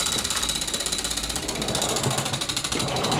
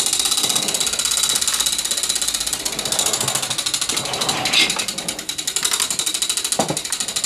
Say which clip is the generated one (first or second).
first